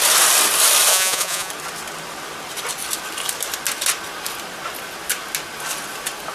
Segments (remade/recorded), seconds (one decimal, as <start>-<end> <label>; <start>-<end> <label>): 0.0-0.9 recorded; 0.9-1.5 remade; 1.5-6.3 recorded